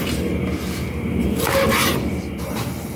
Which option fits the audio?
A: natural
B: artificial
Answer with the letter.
A